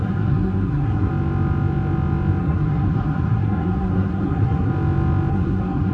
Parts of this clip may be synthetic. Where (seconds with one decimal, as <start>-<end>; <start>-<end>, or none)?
0.0-1.1; 2.4-4.7; 5.3-5.9